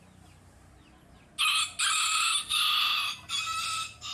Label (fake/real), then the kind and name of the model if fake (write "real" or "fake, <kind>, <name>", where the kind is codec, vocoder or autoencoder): real